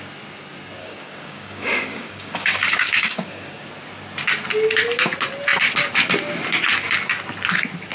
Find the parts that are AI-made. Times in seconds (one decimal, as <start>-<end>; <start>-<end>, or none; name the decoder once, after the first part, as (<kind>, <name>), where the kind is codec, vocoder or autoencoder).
0.8-3.7 (codec, DAC)